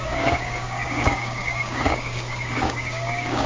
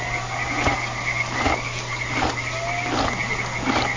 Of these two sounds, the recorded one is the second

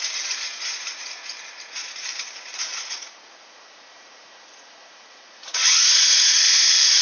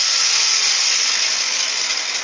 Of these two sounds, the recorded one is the second